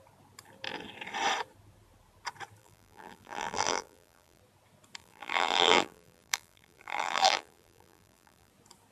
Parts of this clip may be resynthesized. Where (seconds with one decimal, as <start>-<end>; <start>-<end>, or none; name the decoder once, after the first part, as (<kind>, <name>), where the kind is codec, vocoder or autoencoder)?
2.6-4.4 (vocoder, BigVGAN v2); 5.0-8.5